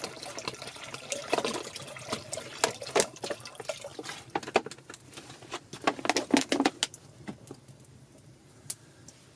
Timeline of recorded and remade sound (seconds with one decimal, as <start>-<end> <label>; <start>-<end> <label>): 0.0-9.4 recorded

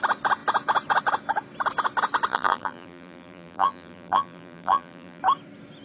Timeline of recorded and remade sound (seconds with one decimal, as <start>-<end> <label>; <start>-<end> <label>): 0.0-2.3 recorded; 2.3-5.2 remade; 5.2-5.8 recorded

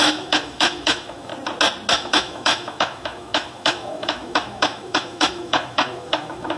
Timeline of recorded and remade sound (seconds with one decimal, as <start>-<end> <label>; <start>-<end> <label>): 0.0-1.3 remade; 1.3-1.9 recorded; 1.9-6.6 remade